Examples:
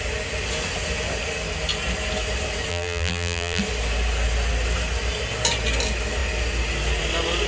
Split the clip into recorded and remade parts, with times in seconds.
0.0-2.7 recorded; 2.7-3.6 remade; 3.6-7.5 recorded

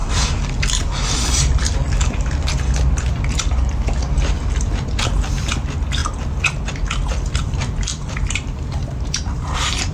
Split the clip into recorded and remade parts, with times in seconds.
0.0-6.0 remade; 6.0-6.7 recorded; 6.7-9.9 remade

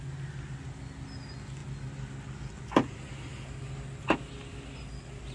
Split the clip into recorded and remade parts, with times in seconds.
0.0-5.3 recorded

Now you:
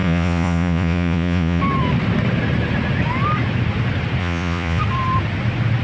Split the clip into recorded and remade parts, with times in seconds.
0.0-1.6 remade; 1.6-4.2 recorded; 4.2-4.8 remade; 4.8-5.8 recorded

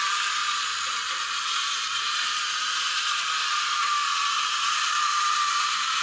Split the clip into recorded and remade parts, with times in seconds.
0.0-4.1 remade; 4.1-4.7 recorded; 4.7-6.0 remade